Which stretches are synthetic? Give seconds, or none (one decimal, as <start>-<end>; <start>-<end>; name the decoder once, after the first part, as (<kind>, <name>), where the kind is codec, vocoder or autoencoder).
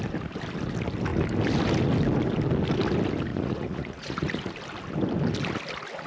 3.3-4.4 (vocoder, Vocos)